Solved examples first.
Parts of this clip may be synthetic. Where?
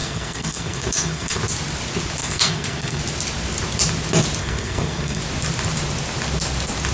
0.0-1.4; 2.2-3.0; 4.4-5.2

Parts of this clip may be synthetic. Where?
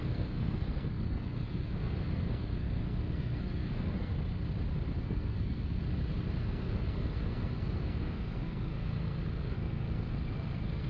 0.0-4.1; 5.0-5.8; 6.4-10.9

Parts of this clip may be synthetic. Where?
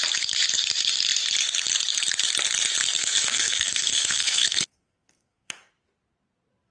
3.0-5.7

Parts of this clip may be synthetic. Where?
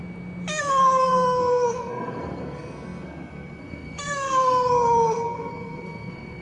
0.5-6.4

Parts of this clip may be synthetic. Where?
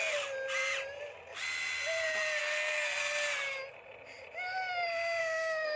2.4-3.0; 5.2-5.8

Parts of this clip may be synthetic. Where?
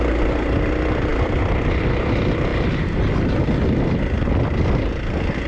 none